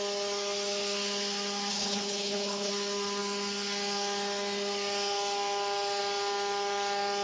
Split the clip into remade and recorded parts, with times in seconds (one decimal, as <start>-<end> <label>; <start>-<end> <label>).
0.0-1.7 recorded; 1.7-2.7 remade; 2.7-7.2 recorded